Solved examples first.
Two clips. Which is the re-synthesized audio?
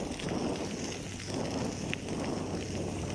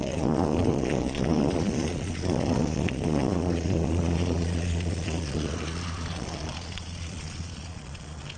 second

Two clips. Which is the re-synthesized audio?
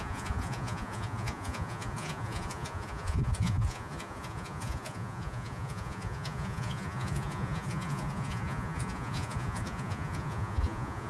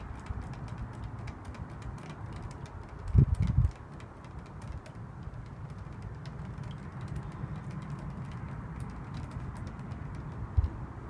first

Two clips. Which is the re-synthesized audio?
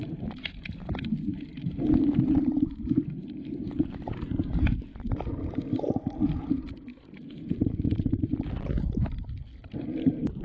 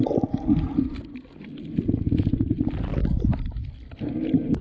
first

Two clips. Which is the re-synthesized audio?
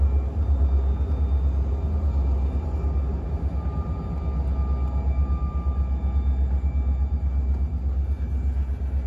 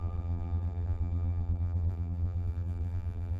second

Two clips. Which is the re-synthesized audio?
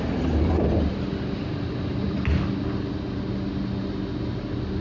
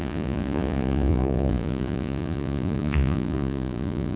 second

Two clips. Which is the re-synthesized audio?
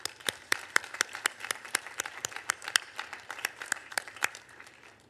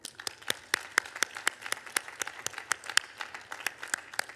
first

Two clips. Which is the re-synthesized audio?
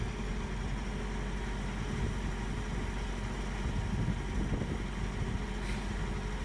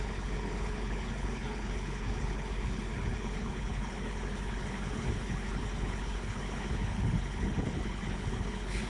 second